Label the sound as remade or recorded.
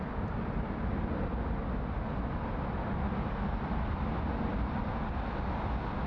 recorded